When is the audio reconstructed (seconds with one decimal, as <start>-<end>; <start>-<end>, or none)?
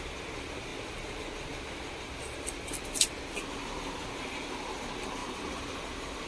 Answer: none